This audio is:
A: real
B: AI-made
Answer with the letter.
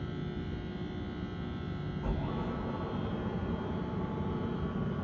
A